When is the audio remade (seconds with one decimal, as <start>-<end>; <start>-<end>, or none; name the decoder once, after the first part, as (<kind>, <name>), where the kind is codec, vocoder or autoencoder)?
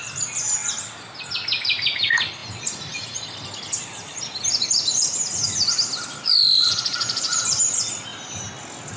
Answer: 6.6-7.4 (vocoder, Vocos)